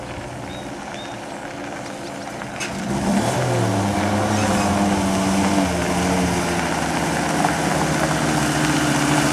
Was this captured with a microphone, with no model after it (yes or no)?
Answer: yes